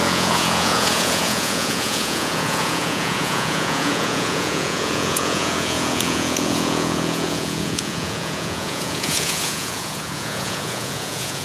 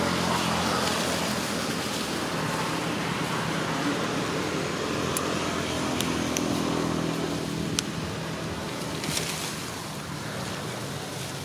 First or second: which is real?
second